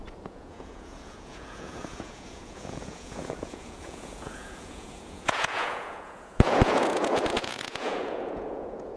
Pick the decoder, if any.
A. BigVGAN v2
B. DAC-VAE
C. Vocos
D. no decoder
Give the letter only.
C